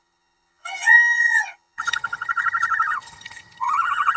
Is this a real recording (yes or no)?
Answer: no